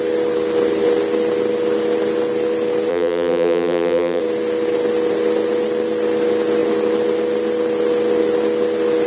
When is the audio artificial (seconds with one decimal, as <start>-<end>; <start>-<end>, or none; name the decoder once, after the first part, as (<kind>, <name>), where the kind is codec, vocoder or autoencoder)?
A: 2.9-4.2 (vocoder, BigVGAN v2)